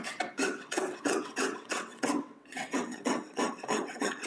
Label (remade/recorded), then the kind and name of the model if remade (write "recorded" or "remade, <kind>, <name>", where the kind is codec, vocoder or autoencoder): remade, vocoder, WaveNeXt